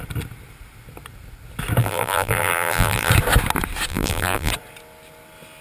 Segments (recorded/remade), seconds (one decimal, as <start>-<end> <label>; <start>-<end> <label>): 0.0-1.8 recorded; 1.8-3.1 remade; 3.1-3.9 recorded; 3.9-4.5 remade; 4.5-5.6 recorded